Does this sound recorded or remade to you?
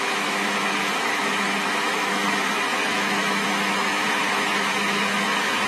remade